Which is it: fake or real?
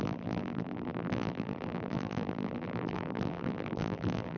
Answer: fake